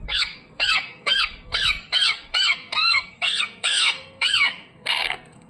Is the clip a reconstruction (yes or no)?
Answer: yes